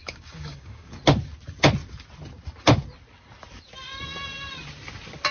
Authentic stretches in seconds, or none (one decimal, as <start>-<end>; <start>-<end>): 0.9-5.3